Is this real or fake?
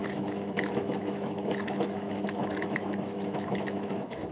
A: fake